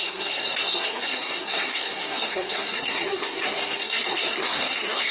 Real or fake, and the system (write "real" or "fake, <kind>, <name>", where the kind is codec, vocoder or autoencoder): fake, codec, SNAC